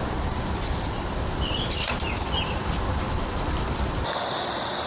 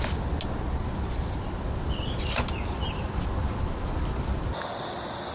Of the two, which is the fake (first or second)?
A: first